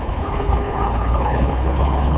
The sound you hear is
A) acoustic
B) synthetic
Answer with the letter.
B